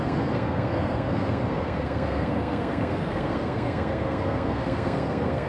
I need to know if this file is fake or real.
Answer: fake